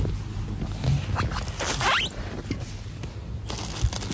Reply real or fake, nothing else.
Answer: real